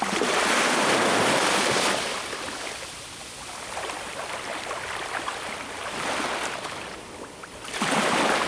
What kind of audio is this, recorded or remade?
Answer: remade